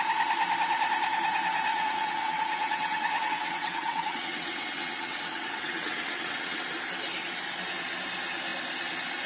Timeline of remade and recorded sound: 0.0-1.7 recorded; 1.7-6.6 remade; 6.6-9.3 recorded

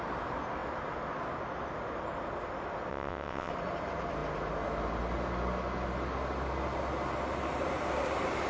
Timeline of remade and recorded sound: 0.0-2.9 recorded; 2.9-3.5 remade; 3.5-8.5 recorded